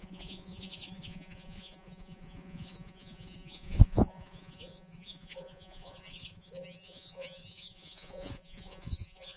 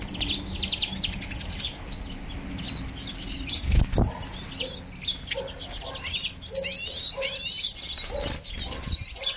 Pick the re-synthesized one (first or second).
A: first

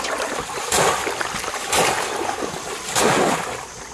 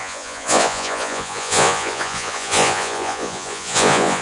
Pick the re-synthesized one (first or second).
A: second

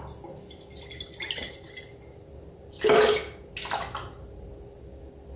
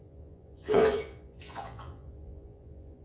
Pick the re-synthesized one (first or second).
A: second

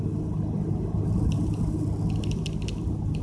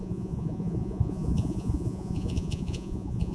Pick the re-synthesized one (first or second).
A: second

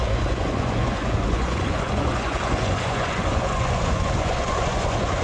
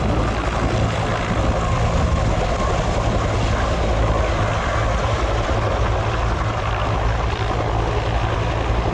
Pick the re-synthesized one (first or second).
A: first